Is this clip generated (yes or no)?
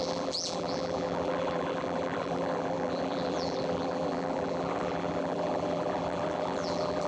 yes